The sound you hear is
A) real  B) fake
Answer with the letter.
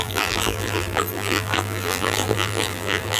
B